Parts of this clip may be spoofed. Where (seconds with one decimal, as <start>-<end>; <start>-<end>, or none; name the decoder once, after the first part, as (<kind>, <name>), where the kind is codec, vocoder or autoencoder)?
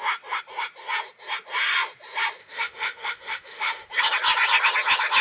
2.4-3.9 (autoencoder, DAC-VAE)